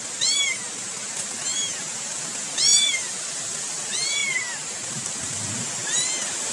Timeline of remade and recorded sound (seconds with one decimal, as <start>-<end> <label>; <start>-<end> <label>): 0.0-2.7 recorded; 2.7-3.8 remade; 3.8-4.2 recorded; 4.2-5.3 remade; 5.3-6.5 recorded